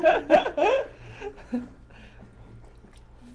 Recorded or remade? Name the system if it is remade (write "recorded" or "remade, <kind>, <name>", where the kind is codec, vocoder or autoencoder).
recorded